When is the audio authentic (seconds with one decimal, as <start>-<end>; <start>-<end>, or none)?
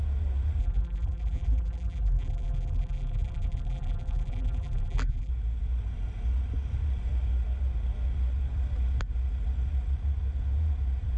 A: 0.0-0.6; 5.3-11.2